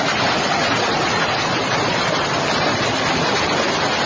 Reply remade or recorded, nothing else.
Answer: recorded